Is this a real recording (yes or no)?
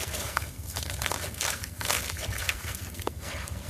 no